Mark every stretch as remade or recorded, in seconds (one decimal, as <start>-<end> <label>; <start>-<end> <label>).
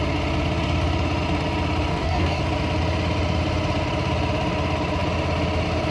0.0-1.9 recorded; 1.9-2.4 remade; 2.4-5.9 recorded